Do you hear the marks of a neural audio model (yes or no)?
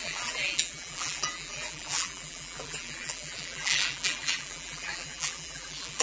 yes